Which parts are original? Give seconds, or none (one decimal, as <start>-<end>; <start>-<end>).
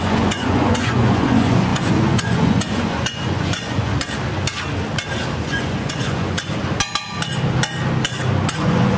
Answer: 3.9-5.4; 6.6-8.6